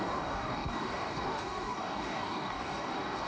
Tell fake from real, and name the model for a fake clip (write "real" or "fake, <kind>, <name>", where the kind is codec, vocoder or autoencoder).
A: fake, codec, DAC